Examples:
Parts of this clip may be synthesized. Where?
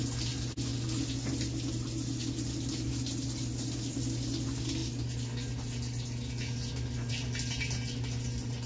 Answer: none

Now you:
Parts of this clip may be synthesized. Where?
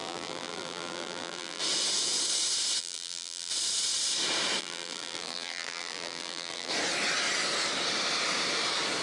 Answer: 0.0-1.6; 2.8-3.5; 4.6-6.7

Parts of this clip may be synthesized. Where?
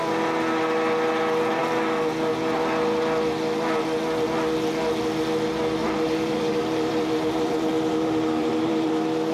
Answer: 5.8-8.9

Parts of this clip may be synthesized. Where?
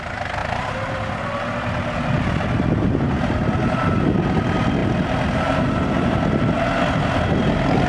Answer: none